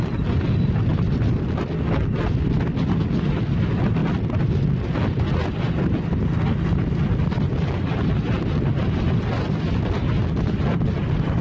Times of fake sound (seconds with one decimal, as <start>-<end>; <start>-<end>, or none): none